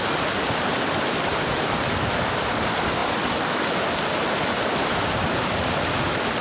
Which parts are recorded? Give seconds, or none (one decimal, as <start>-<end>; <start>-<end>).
0.0-6.4